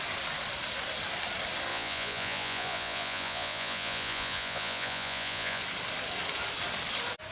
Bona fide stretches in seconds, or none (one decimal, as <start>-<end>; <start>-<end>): 0.0-1.7; 5.6-7.3